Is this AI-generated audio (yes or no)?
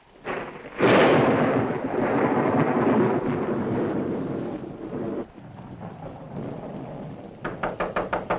no